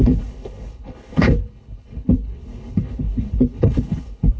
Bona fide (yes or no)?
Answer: no